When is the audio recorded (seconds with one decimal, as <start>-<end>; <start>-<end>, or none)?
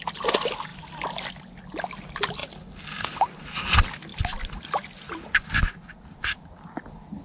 0.0-7.2